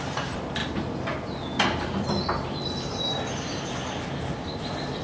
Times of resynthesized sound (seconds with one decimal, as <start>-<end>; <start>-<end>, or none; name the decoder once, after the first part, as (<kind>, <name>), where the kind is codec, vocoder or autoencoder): none